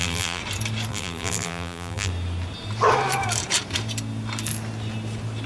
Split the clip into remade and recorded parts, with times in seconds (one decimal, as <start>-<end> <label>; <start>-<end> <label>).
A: 0.0-0.4 remade; 0.4-0.9 recorded; 0.9-2.1 remade; 2.1-5.5 recorded